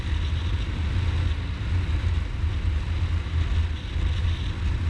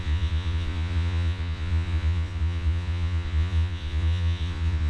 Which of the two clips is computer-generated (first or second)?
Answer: second